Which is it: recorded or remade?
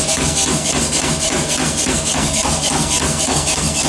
remade